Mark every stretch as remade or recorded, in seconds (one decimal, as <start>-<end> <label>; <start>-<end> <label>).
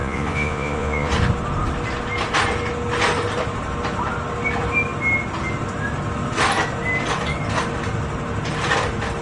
0.0-1.1 remade; 1.1-9.2 recorded